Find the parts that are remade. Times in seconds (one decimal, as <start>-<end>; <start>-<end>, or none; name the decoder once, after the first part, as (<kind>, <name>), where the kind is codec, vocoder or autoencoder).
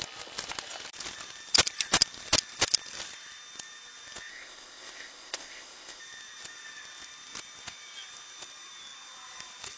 4.3-6.0 (codec, ZipCodec)